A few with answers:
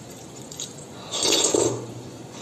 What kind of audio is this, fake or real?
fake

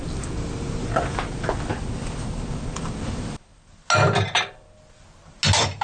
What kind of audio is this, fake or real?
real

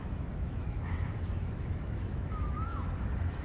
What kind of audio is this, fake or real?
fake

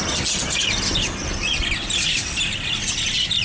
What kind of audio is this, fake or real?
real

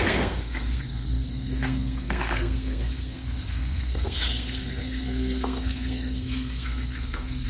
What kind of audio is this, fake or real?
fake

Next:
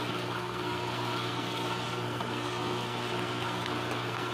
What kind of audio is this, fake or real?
fake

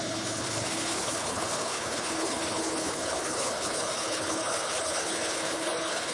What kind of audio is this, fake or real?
fake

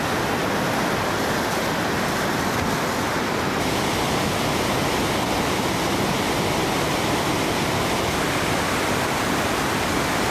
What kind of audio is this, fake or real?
real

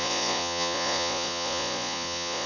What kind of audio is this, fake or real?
fake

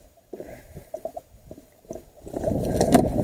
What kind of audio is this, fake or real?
fake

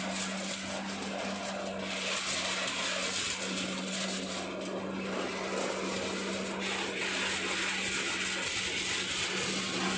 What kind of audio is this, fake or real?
real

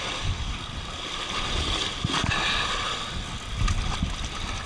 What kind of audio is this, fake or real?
real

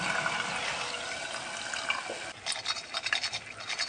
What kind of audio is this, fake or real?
real